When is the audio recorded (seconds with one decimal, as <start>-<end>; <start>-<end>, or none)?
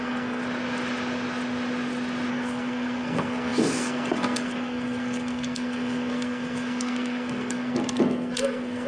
0.4-2.3